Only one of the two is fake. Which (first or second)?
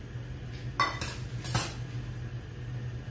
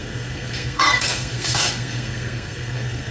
second